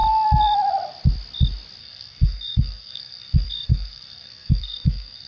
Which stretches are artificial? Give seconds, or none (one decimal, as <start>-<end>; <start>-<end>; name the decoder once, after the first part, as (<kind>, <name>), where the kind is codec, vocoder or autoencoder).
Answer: 1.8-5.3 (codec, SNAC)